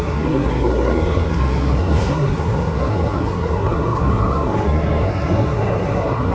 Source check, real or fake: fake